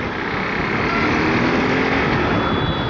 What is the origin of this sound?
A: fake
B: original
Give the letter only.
B